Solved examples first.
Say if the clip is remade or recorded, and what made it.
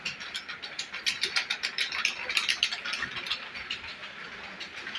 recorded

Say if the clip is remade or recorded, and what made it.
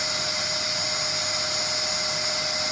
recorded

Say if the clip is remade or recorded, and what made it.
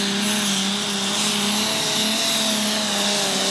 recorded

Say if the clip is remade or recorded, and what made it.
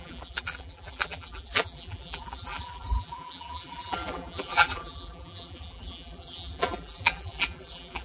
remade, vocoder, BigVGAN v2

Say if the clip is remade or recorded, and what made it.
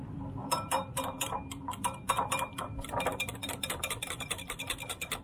remade, vocoder, BigVGAN v2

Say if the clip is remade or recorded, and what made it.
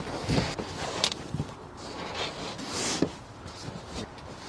remade, vocoder, BigVGAN v2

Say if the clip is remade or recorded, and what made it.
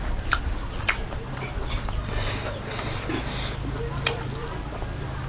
remade, vocoder, BigVGAN v2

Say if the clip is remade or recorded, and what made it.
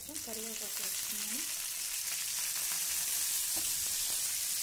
recorded